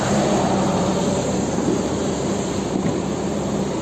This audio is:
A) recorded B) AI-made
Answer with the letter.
B